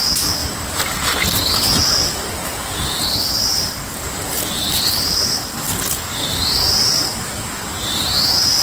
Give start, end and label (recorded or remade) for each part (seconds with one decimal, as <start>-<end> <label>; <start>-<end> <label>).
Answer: 0.0-8.6 recorded